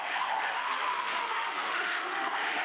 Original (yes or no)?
no